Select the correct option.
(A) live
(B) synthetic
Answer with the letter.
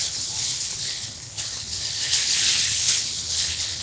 B